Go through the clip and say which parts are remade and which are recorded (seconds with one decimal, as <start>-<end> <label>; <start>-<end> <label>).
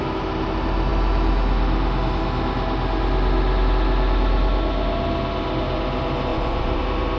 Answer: 0.0-6.3 recorded; 6.3-6.8 remade; 6.8-7.2 recorded